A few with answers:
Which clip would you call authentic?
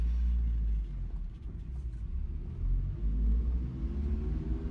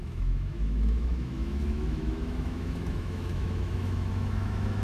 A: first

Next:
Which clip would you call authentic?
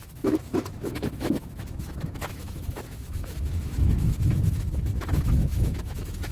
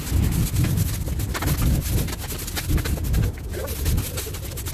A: second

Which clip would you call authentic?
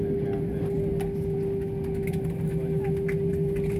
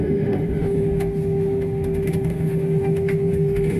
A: first